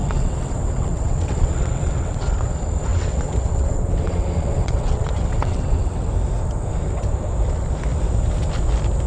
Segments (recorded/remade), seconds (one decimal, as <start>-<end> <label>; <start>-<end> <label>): 0.0-2.5 remade; 2.5-2.9 recorded; 2.9-6.1 remade; 6.1-9.1 recorded